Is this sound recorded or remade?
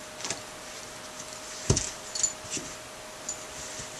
recorded